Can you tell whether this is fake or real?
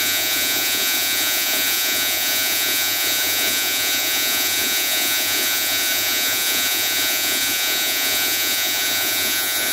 fake